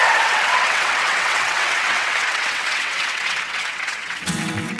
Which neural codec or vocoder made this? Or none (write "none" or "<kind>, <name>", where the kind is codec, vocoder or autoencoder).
vocoder, WaveNeXt